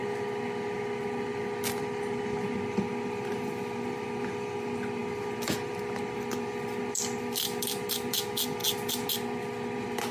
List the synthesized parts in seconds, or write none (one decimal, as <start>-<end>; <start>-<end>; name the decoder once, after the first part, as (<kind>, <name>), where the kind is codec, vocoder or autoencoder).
none